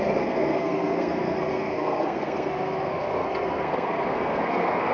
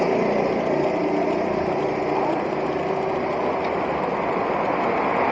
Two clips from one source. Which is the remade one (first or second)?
first